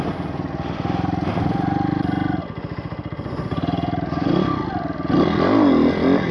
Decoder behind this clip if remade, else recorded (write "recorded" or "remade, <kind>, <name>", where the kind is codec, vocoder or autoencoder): recorded